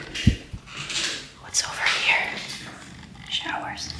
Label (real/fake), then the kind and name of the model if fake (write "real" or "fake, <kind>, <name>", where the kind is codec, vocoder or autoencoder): real